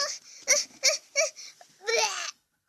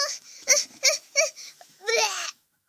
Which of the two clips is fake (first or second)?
second